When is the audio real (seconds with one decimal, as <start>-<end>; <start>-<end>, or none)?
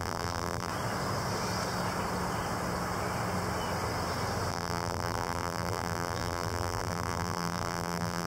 0.7-4.5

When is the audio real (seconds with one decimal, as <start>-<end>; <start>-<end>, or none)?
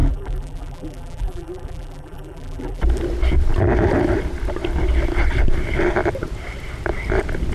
2.8-7.5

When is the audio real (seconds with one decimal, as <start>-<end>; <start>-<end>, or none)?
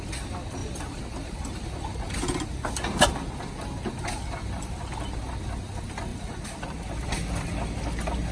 0.0-0.6; 3.4-6.1; 7.1-8.3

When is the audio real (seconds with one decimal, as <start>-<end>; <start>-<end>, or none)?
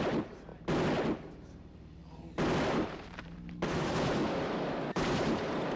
0.5-1.3; 2.0-2.7; 4.2-4.9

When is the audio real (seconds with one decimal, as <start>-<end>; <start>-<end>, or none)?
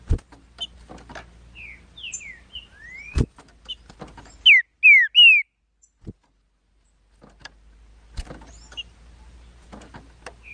0.0-10.5